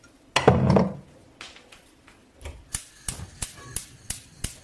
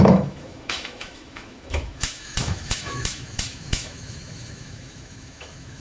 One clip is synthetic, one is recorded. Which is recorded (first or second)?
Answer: first